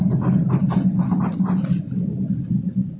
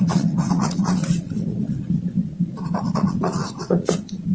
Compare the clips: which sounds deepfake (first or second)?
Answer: second